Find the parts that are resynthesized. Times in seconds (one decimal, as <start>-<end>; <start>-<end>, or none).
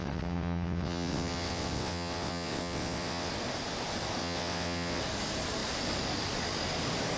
0.0-3.3; 4.2-5.0